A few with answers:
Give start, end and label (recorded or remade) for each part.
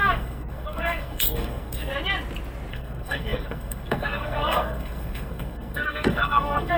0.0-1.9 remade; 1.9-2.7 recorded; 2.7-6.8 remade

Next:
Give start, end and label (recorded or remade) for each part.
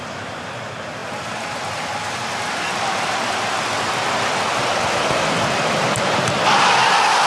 0.0-7.3 recorded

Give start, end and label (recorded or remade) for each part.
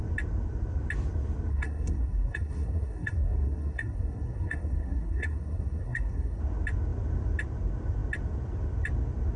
0.0-1.5 recorded; 1.5-6.4 remade; 6.4-9.4 recorded